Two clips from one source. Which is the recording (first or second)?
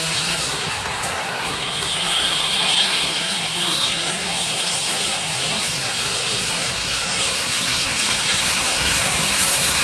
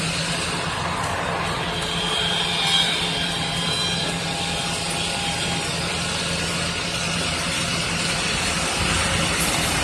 second